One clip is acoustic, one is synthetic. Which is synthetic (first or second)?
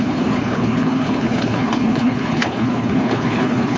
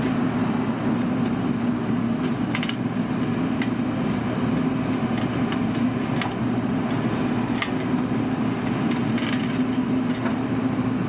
first